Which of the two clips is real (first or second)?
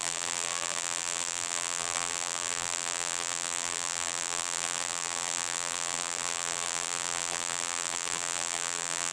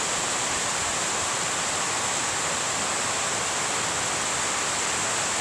second